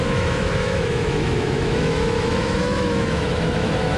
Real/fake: fake